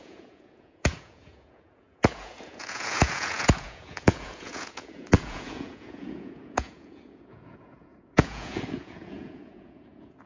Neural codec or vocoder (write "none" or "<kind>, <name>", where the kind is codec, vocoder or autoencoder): vocoder, Vocos